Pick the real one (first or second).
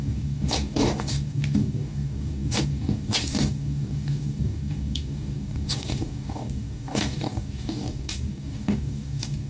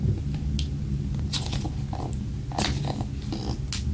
second